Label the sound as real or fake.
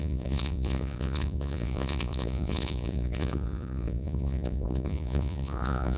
fake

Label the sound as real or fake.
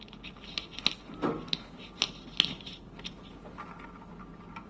real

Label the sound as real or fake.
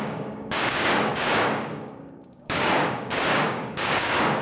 fake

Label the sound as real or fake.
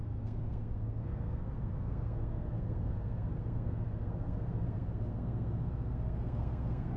fake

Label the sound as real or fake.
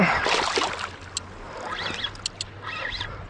real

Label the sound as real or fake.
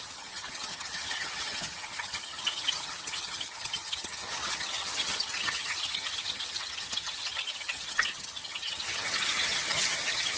fake